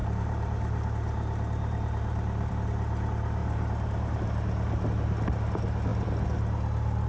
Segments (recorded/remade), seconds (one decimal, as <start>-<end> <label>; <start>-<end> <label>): 0.0-2.5 remade; 2.5-3.4 recorded; 3.4-4.8 remade; 4.8-7.1 recorded